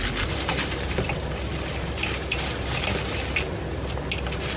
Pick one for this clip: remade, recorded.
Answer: recorded